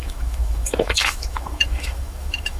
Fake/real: fake